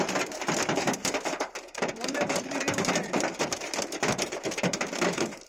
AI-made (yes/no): yes